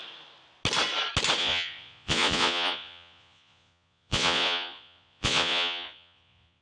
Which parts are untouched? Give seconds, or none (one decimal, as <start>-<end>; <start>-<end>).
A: 0.0-1.4